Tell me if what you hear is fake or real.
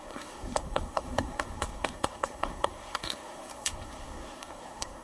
fake